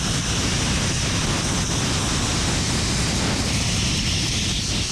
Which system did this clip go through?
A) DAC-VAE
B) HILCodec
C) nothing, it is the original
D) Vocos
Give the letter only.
C